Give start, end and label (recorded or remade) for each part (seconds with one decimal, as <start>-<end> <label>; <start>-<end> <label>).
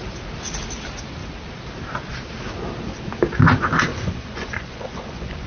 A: 0.0-3.9 recorded; 3.9-5.5 remade